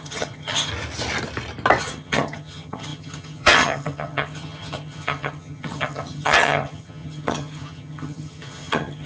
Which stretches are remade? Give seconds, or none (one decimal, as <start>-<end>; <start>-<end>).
0.0-0.7; 1.8-9.1